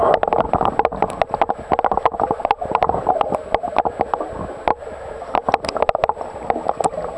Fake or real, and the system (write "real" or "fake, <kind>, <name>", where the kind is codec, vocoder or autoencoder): real